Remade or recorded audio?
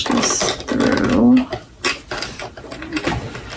recorded